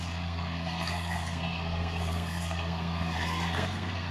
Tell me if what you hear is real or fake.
fake